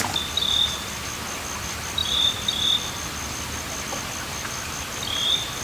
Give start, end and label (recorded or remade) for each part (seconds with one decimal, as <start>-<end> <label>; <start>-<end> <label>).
0.0-5.6 recorded